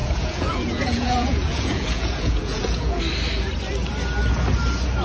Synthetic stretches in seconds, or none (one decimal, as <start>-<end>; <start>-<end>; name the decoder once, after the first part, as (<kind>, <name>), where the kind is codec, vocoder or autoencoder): 0.0-3.0 (vocoder, Vocos)